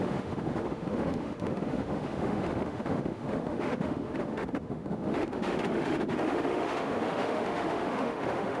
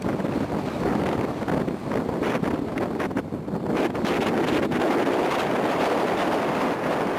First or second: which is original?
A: second